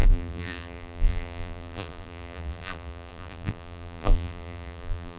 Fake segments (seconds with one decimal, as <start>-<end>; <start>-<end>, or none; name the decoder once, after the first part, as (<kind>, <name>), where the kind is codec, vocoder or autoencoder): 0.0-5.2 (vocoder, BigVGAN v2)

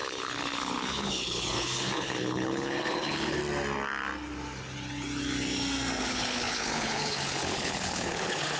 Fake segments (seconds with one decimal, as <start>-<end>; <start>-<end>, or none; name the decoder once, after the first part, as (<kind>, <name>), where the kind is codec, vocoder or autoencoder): 0.0-3.4 (codec, HILCodec); 6.0-8.6

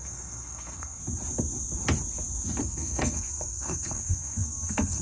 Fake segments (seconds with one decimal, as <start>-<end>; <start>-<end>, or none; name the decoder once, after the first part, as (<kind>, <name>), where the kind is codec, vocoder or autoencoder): 0.0-1.0 (codec, SNAC); 2.6-5.0